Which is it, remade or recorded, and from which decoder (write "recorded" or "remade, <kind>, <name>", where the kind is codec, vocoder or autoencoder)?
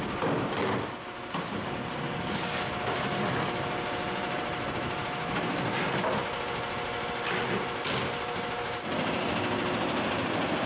recorded